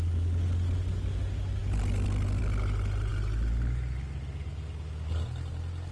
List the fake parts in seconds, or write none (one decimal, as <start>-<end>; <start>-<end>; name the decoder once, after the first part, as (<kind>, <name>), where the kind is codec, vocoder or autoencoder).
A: none